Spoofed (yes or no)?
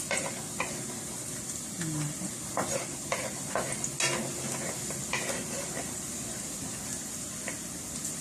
no